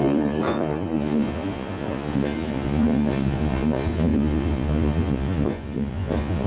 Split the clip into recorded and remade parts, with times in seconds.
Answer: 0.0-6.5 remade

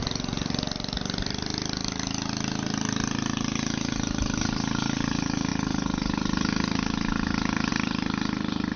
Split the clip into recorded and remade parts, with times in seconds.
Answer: 0.0-8.8 recorded